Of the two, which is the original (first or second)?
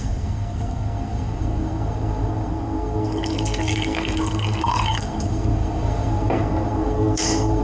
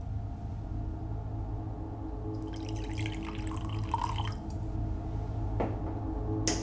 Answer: second